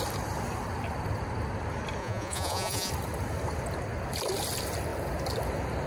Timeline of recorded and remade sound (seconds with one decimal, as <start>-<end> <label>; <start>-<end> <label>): 0.0-2.0 recorded; 2.0-2.9 remade; 2.9-5.9 recorded